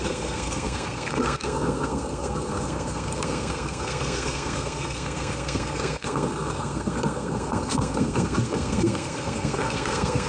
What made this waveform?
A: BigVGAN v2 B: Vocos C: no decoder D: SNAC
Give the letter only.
D